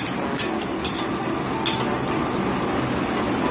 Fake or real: real